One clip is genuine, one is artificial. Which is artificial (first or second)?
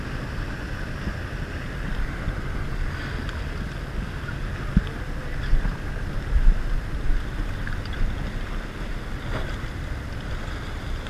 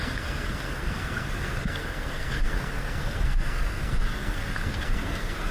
second